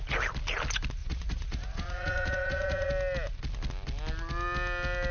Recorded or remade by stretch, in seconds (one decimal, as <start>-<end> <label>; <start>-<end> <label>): 0.0-1.0 recorded; 1.0-2.9 remade; 2.9-5.1 recorded

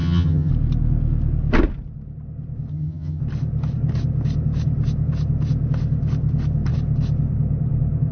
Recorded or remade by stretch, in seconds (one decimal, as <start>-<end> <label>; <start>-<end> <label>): 0.0-0.5 remade; 0.5-2.7 recorded; 2.7-3.2 remade; 3.2-8.1 recorded

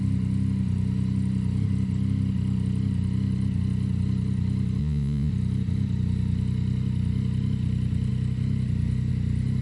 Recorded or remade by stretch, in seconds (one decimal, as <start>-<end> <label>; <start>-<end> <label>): 0.0-4.8 recorded; 4.8-5.3 remade; 5.3-9.6 recorded

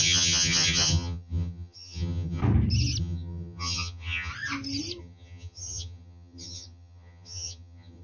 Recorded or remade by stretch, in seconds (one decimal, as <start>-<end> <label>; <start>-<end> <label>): 0.0-2.4 remade; 2.4-3.0 recorded; 3.0-4.3 remade; 4.3-5.0 recorded; 5.0-8.0 remade

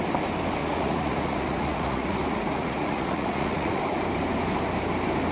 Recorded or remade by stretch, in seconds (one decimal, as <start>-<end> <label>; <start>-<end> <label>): 0.0-0.6 recorded; 0.6-3.8 remade; 3.8-5.3 recorded